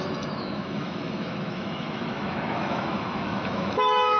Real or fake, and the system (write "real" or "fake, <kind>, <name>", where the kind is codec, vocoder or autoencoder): fake, autoencoder, DAC-VAE